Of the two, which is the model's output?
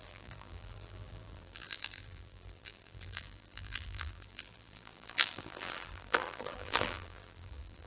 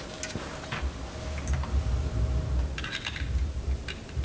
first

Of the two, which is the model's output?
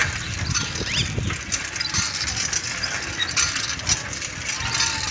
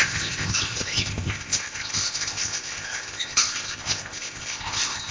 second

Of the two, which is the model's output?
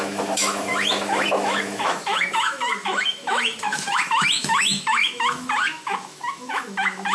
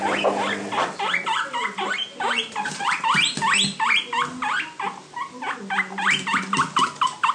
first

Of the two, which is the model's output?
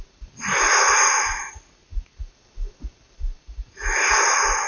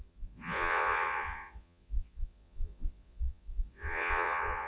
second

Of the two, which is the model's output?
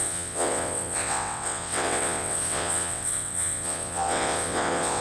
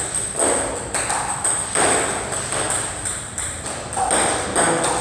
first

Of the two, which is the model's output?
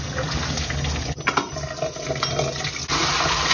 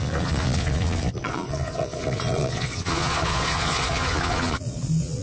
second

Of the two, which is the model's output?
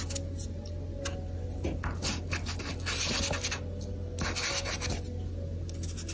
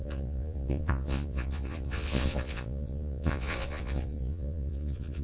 second